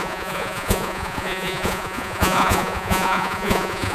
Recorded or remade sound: remade